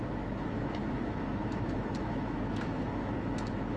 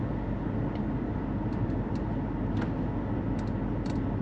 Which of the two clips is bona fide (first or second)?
second